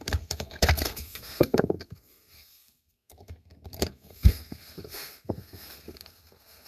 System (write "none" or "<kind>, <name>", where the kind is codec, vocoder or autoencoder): codec, SNAC